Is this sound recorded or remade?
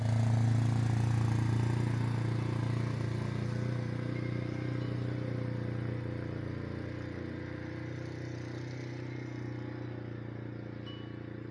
recorded